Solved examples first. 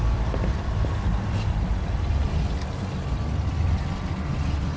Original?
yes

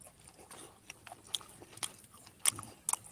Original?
yes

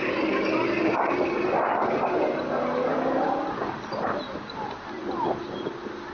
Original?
yes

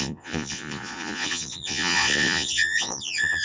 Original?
no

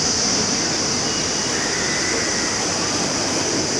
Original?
yes